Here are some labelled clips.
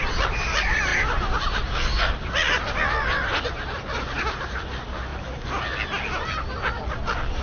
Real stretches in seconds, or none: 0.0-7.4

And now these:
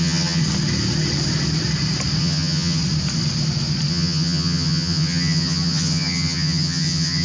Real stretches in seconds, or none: 0.4-2.2; 2.8-3.9

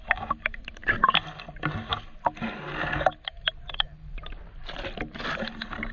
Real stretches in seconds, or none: 0.0-5.9

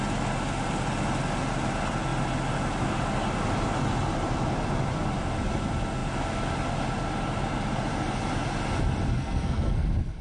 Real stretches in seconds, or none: 0.0-9.1